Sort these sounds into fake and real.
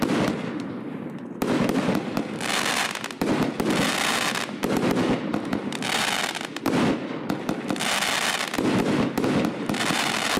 real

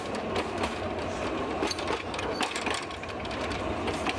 real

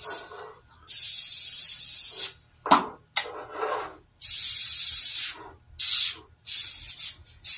real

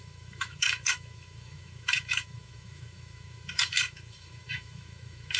fake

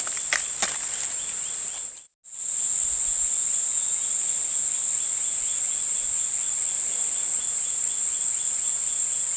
real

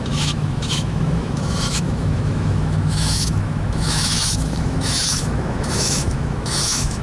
fake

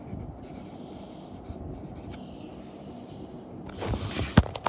real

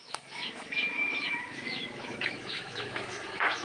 fake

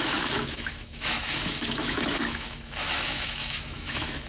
fake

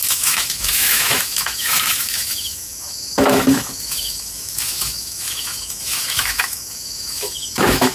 fake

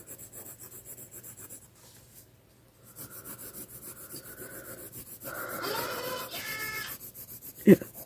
real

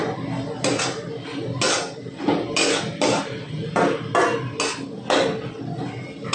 real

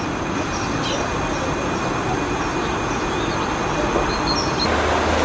real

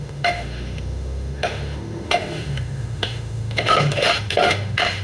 fake